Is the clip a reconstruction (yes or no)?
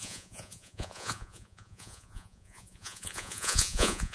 yes